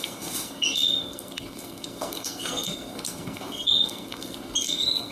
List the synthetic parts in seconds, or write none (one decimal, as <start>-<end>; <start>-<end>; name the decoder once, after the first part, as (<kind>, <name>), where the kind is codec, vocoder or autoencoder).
0.0-5.1 (codec, SNAC)